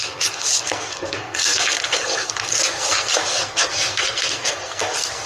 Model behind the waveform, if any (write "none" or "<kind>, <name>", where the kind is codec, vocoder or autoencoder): codec, SNAC